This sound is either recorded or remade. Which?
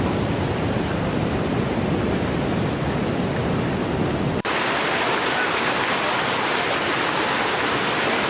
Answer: recorded